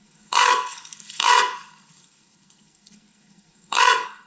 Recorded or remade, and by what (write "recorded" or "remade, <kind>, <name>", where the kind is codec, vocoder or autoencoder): remade, codec, SNAC